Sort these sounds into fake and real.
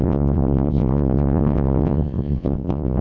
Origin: fake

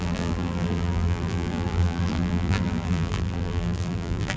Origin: fake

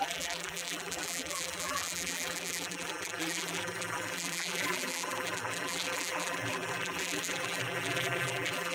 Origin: fake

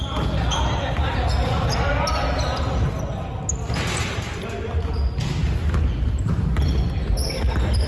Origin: real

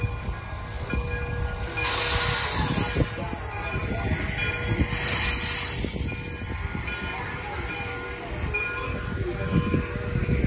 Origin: real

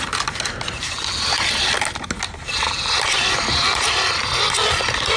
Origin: real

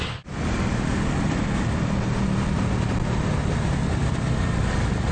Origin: real